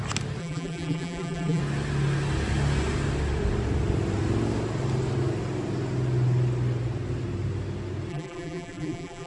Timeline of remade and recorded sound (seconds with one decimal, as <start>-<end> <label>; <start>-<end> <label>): 0.0-0.4 recorded; 0.4-1.6 remade; 1.6-8.1 recorded; 8.1-9.3 remade